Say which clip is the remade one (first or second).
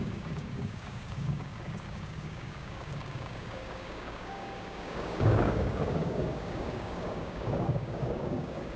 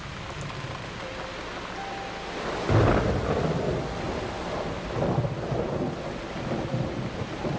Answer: first